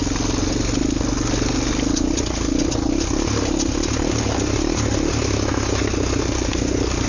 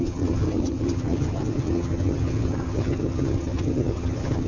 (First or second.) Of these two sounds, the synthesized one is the second